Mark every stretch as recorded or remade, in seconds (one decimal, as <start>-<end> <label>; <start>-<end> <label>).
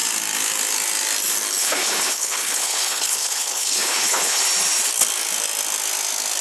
0.0-1.6 recorded; 1.6-4.4 remade; 4.4-6.4 recorded